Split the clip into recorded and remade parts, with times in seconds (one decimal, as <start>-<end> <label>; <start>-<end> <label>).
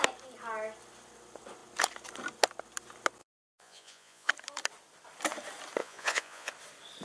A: 0.0-3.2 recorded; 3.2-4.3 remade; 4.3-5.8 recorded; 5.8-6.5 remade; 6.5-7.0 recorded